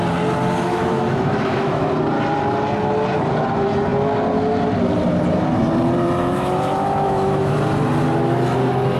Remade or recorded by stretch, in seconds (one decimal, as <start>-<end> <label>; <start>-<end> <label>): 0.0-0.7 recorded; 0.7-1.9 remade; 1.9-6.2 recorded; 6.2-7.5 remade; 7.5-9.0 recorded